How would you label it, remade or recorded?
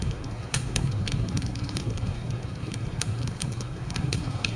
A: remade